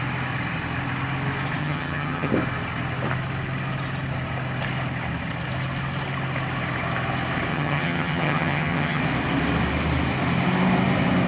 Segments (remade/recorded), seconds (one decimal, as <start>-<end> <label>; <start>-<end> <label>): 0.0-1.6 recorded; 1.6-2.3 remade; 2.3-7.5 recorded; 7.5-9.0 remade; 9.0-11.3 recorded